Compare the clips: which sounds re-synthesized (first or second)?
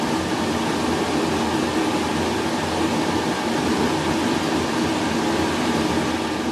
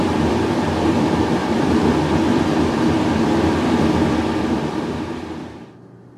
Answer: second